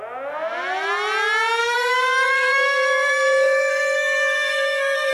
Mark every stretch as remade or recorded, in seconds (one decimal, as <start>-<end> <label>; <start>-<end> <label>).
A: 0.0-1.6 recorded; 1.6-5.1 remade